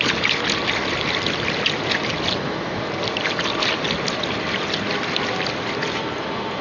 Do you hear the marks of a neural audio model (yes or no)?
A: no